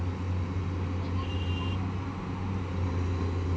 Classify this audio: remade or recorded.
recorded